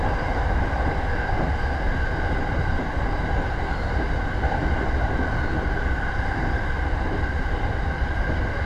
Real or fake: real